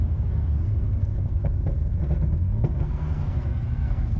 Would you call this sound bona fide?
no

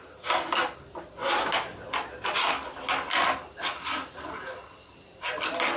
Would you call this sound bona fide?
yes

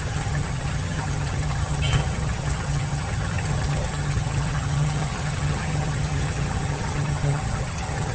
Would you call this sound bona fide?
no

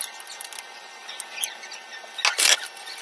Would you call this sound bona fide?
yes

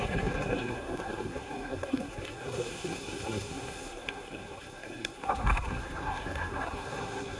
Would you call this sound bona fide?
no